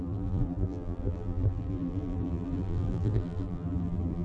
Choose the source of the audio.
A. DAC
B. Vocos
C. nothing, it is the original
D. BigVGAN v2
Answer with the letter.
D